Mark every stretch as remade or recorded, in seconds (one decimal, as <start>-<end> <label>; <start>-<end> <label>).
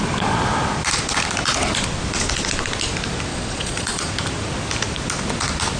0.0-3.3 recorded; 3.3-4.1 remade; 4.1-5.8 recorded